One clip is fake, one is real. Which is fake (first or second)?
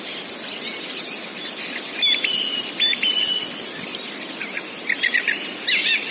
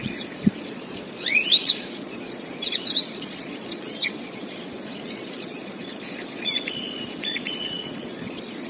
second